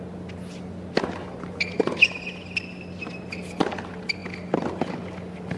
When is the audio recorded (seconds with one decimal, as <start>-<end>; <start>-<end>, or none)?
0.0-5.6